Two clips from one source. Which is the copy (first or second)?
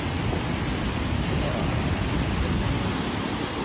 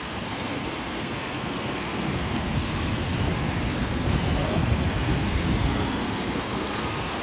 second